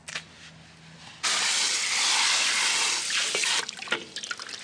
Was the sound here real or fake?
real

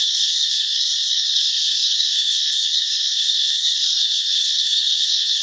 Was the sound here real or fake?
fake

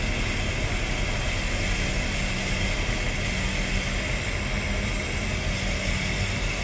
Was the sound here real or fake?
real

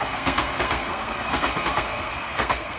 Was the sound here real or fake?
fake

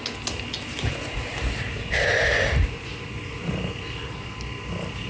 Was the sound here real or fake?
real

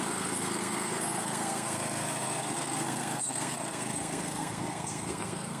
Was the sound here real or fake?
fake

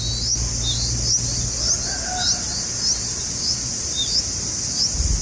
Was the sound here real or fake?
real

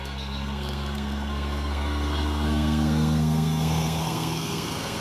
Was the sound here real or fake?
fake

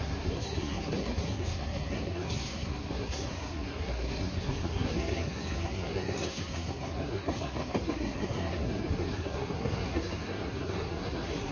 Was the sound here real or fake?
fake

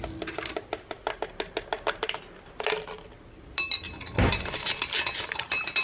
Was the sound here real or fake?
real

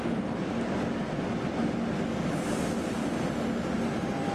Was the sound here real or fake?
real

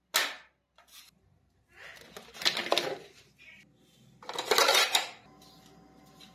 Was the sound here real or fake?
real